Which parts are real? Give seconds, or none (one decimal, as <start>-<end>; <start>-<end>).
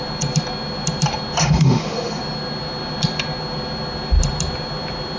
0.0-1.4; 2.2-5.2